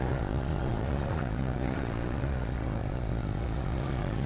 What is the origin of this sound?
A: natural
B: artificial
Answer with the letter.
B